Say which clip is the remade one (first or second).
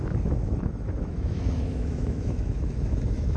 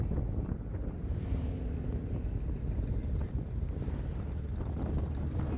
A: first